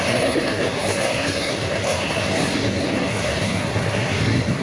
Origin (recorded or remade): remade